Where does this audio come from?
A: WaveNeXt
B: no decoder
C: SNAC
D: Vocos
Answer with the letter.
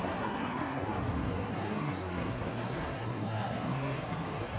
C